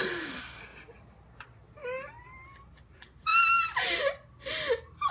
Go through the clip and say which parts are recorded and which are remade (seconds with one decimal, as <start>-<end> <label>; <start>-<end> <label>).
0.0-5.1 recorded